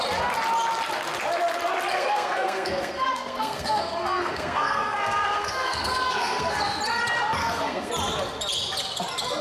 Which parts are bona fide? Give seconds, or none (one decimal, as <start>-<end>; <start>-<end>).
0.0-1.9; 6.8-7.4; 7.9-9.4